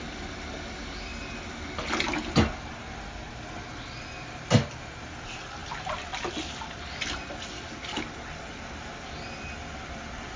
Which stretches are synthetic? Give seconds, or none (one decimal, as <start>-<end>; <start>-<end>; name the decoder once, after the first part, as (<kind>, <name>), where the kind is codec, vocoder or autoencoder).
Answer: none